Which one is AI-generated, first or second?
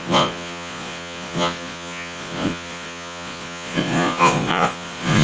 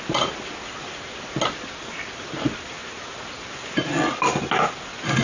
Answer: first